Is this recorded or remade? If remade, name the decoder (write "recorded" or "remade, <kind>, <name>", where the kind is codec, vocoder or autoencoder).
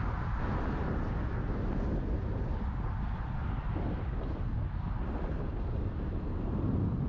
recorded